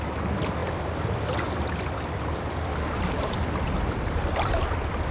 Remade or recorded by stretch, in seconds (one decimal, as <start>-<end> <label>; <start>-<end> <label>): 0.0-5.1 recorded